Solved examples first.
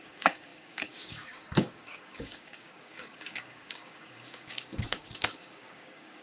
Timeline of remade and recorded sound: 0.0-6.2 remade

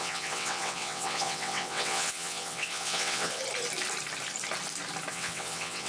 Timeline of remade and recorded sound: 0.0-3.4 remade; 3.4-5.1 recorded; 5.1-5.9 remade

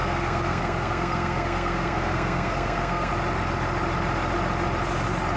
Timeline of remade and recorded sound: 0.0-3.1 remade; 3.1-5.4 recorded

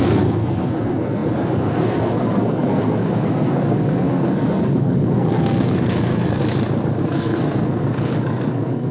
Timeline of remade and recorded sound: 0.0-6.4 remade; 6.4-7.0 recorded; 7.0-8.9 remade

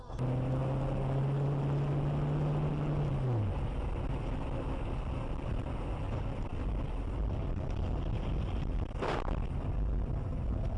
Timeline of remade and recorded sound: 0.0-10.8 recorded

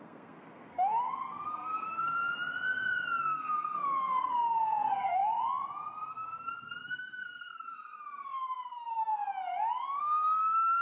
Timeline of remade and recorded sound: 0.0-2.2 remade; 2.2-3.2 recorded; 3.2-5.2 remade; 5.2-6.1 recorded; 6.1-9.1 remade; 9.1-10.0 recorded; 10.0-10.8 remade

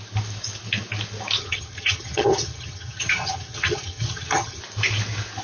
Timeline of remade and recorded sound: 0.0-1.4 recorded; 1.4-4.6 remade; 4.6-5.4 recorded

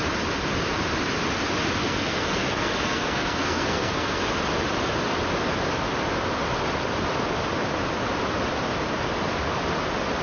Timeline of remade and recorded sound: 0.0-1.8 recorded; 1.8-4.2 remade; 4.2-10.2 recorded